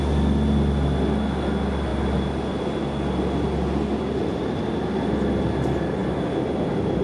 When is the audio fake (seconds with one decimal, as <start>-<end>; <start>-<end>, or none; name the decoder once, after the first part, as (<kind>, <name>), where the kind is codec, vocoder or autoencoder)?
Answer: none